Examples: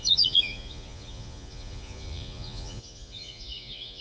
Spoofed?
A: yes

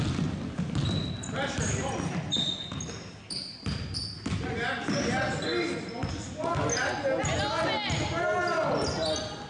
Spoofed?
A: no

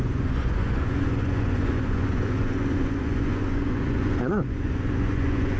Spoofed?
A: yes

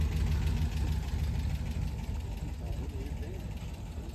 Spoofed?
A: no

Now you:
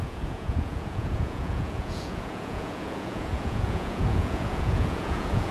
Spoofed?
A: yes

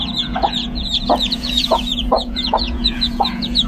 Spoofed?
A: yes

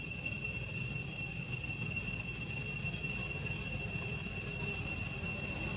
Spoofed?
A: no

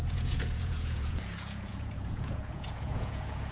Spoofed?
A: yes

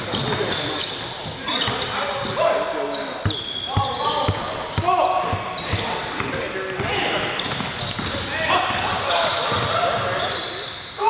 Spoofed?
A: no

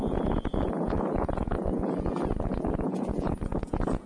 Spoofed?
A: yes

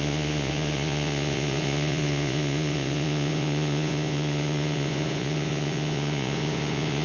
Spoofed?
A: yes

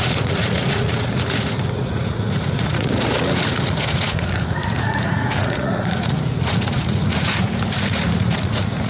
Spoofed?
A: yes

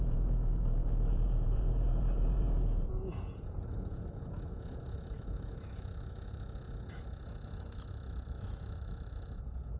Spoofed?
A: yes